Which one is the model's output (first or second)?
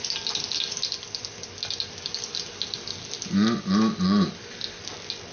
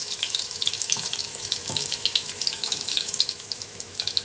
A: second